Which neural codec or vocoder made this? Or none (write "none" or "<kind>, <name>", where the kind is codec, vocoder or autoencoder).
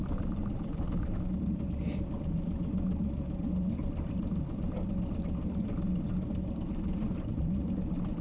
none